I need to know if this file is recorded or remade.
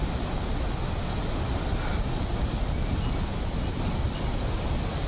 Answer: recorded